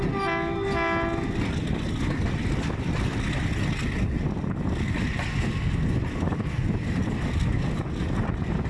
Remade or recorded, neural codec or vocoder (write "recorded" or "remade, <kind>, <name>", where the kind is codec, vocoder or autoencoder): recorded